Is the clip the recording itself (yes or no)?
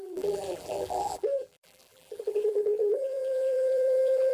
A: no